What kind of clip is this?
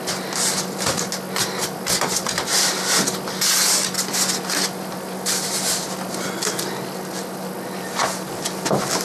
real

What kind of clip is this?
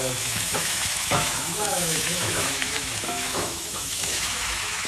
fake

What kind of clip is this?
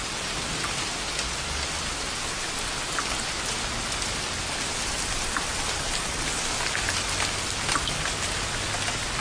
real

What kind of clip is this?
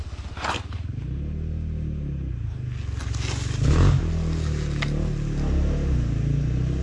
real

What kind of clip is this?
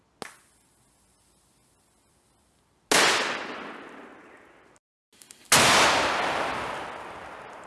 real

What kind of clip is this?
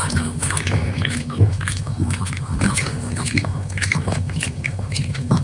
fake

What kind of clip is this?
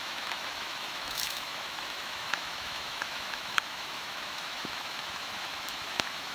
fake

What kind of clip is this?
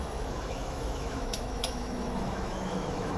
fake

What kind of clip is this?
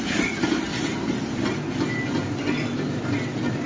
real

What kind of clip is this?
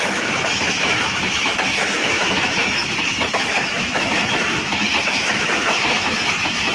fake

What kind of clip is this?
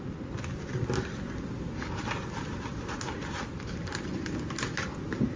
real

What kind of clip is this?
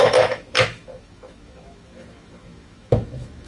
fake